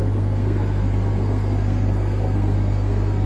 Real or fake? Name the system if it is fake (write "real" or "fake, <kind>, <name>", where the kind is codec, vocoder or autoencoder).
fake, codec, SNAC